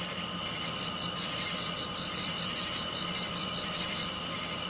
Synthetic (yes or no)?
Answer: no